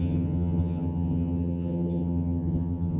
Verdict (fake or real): fake